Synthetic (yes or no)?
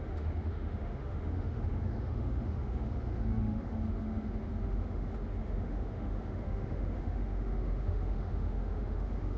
yes